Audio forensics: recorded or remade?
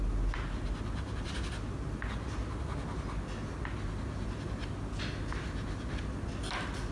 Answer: recorded